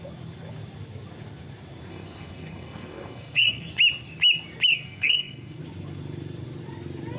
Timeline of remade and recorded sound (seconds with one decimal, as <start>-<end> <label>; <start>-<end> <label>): 0.0-1.9 recorded; 1.9-3.7 remade; 3.7-4.7 recorded; 4.7-5.6 remade; 5.6-7.2 recorded